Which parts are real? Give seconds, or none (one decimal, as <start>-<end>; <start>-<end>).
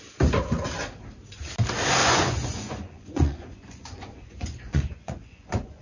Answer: 0.0-2.0